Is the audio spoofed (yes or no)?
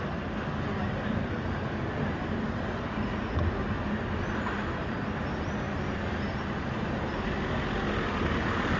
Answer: no